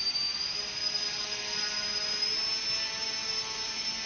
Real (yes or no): yes